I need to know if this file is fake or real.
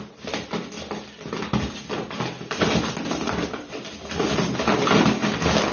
real